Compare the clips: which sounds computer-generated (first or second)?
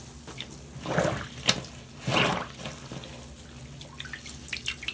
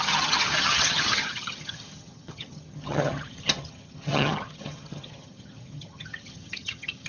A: second